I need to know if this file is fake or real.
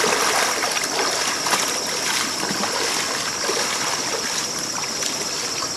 real